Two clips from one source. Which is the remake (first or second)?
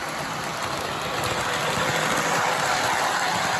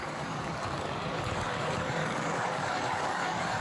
second